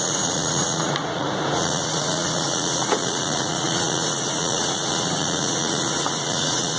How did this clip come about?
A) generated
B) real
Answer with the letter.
A